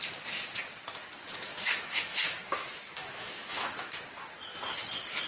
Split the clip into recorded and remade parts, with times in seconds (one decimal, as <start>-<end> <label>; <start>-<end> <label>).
0.0-1.5 recorded; 1.5-4.0 remade; 4.0-5.3 recorded